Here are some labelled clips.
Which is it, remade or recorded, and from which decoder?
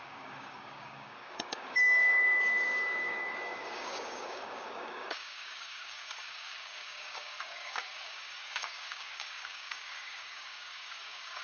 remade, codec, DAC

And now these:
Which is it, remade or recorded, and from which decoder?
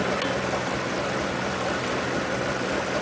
recorded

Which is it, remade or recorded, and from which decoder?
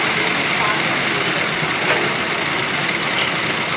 recorded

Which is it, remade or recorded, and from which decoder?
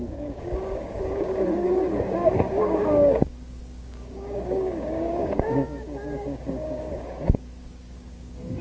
remade, codec, DAC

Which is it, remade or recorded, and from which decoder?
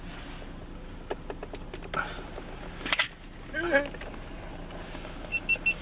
recorded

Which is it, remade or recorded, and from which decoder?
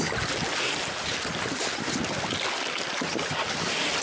recorded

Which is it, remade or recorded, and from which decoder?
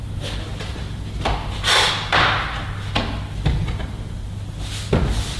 recorded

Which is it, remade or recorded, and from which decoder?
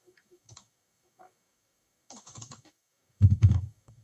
remade, codec, DAC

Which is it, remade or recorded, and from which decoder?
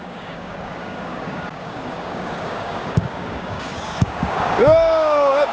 remade, codec, DAC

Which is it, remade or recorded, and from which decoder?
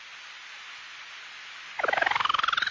recorded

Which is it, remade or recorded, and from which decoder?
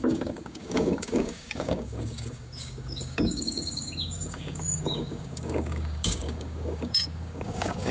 remade, codec, DAC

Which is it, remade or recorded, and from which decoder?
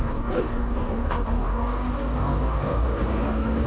remade, codec, DAC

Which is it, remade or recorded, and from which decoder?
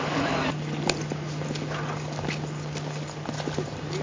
recorded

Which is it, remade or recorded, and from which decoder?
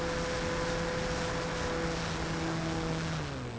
recorded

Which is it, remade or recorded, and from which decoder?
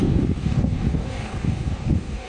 remade, codec, DAC